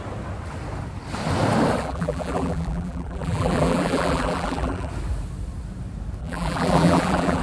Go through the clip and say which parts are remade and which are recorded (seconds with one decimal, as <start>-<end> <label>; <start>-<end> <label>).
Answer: 0.0-1.8 recorded; 1.8-4.9 remade; 4.9-6.2 recorded; 6.2-7.4 remade